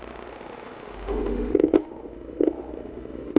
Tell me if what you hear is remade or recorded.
remade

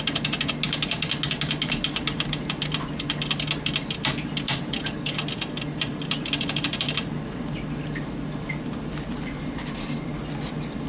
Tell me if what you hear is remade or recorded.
recorded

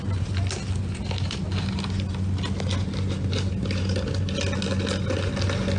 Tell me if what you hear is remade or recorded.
recorded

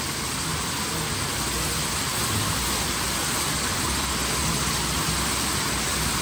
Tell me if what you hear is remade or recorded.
recorded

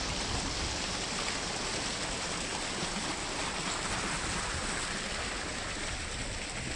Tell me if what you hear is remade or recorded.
recorded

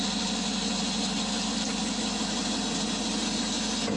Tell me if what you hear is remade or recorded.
recorded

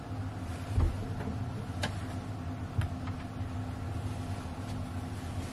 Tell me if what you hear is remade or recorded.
recorded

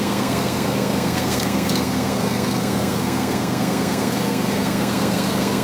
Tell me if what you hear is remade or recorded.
remade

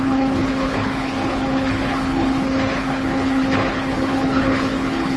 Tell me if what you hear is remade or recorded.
remade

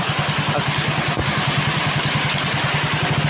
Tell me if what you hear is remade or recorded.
recorded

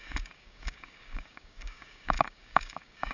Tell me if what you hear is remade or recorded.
remade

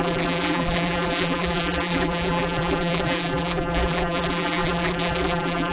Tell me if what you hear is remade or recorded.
remade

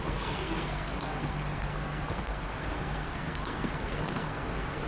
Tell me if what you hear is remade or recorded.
remade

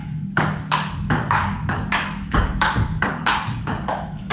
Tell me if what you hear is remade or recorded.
remade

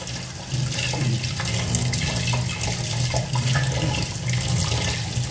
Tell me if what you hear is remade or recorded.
recorded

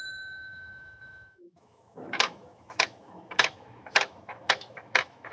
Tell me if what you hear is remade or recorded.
remade